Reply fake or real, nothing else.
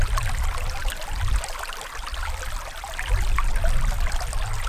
real